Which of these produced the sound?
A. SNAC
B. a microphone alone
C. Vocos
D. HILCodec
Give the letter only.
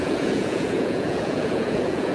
C